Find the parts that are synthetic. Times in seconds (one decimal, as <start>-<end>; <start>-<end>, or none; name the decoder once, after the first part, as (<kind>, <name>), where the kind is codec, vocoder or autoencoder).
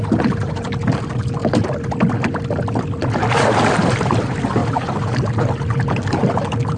0.0-1.4 (vocoder, BigVGAN v2); 1.9-6.8